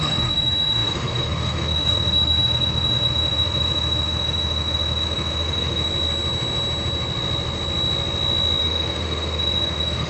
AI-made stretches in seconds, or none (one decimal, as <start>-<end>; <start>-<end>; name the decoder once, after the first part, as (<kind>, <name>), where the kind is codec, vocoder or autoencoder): 0.0-5.9 (autoencoder, DAC-VAE); 8.6-10.1